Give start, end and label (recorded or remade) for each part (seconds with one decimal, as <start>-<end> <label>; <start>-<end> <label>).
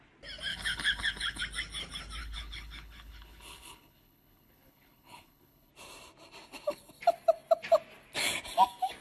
0.0-0.5 recorded; 0.5-1.4 remade; 1.4-2.2 recorded; 2.2-5.7 remade; 5.7-9.0 recorded